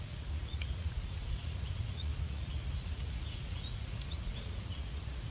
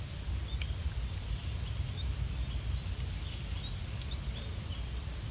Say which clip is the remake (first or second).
first